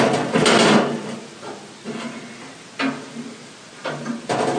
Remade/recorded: recorded